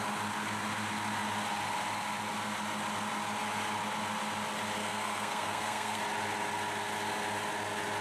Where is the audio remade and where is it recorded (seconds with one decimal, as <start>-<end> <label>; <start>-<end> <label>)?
0.0-4.8 recorded; 4.8-6.0 remade; 6.0-8.0 recorded